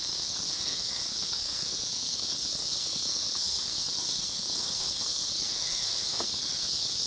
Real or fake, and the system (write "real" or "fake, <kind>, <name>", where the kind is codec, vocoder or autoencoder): fake, codec, SNAC